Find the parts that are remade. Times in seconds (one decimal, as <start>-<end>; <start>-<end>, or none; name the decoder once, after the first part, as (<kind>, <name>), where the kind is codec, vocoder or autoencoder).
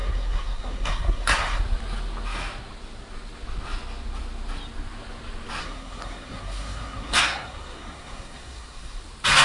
0.0-1.6 (codec, SNAC); 5.6-9.0